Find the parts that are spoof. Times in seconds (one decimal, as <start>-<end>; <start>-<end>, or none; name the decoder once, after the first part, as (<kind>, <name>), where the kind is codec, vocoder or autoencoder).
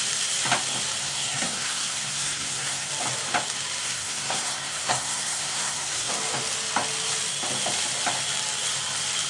1.0-2.9 (codec, SNAC); 3.8-6.1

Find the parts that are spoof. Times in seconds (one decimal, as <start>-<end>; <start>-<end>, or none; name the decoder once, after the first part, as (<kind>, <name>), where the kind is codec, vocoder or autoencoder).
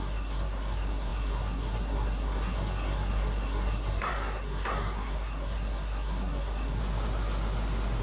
0.0-6.8 (codec, SNAC)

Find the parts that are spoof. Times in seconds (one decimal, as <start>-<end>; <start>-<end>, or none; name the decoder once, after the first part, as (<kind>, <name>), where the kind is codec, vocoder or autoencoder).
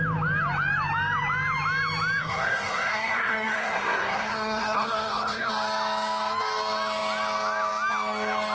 2.2-5.5 (codec, SNAC)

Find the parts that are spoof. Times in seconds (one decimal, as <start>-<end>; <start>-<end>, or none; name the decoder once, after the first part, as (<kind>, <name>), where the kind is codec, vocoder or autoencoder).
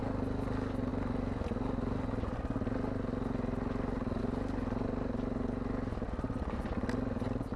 none